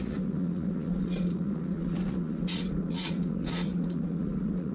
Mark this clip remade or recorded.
remade